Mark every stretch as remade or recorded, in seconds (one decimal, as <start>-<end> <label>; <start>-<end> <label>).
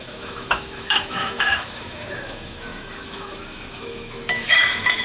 0.0-5.0 remade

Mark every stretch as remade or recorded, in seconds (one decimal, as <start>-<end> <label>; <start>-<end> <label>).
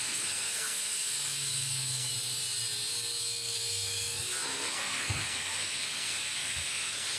0.0-2.1 remade; 2.1-3.2 recorded; 3.2-7.2 remade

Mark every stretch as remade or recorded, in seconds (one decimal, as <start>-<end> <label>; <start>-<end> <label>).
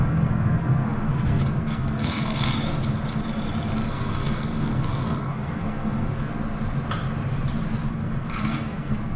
0.0-2.8 remade; 2.8-3.9 recorded; 3.9-6.3 remade; 6.3-7.9 recorded; 7.9-9.2 remade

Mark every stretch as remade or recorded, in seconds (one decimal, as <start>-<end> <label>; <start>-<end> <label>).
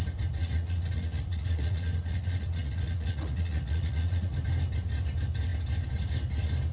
0.0-0.4 recorded; 0.4-4.4 remade; 4.4-6.7 recorded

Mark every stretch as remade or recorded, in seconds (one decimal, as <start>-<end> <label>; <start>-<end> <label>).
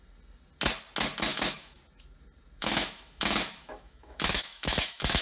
0.0-1.3 recorded; 1.3-1.8 remade; 1.8-2.6 recorded; 2.6-5.2 remade